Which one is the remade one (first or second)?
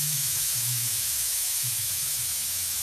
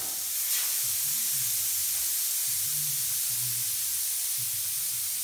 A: first